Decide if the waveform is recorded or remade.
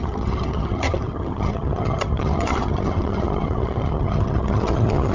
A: remade